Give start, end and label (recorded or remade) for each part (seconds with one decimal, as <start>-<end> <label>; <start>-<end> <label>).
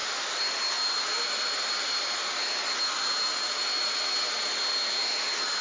0.0-5.6 recorded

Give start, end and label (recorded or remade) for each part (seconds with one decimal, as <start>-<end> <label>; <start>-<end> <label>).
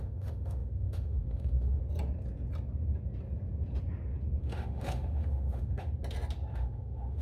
0.0-1.8 remade; 1.8-4.4 recorded; 4.4-5.9 remade; 5.9-6.5 recorded; 6.5-7.2 remade